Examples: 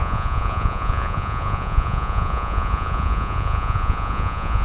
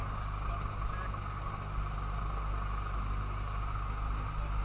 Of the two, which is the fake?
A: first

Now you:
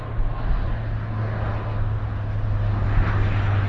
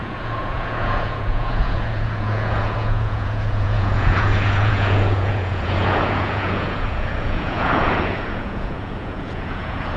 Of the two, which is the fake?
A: second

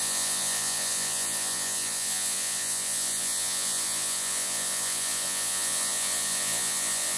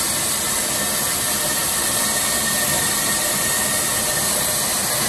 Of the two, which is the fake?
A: first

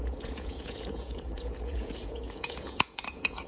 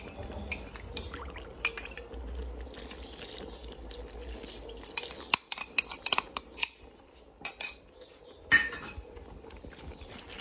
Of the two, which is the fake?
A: first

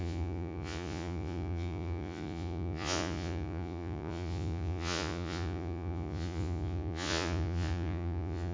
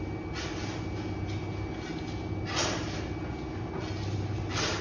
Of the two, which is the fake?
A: first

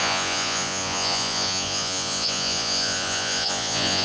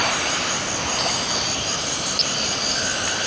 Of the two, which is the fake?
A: first